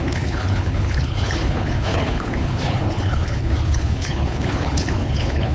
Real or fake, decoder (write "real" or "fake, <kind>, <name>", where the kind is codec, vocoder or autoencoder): fake, codec, HILCodec